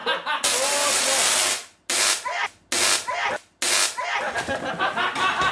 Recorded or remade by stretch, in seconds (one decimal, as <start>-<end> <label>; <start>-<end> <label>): 0.0-5.5 recorded